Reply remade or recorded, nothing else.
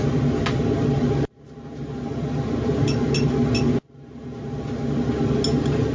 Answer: recorded